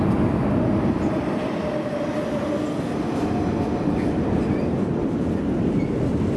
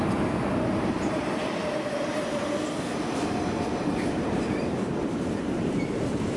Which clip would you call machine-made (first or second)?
second